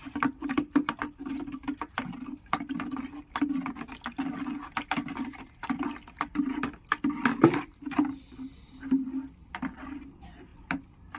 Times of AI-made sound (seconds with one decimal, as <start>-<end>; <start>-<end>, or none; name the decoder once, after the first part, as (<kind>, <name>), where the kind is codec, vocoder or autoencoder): none